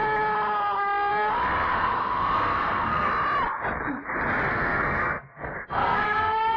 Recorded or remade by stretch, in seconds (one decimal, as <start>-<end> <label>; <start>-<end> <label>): 0.0-1.7 recorded; 1.7-3.1 remade; 3.1-4.5 recorded; 4.5-6.6 remade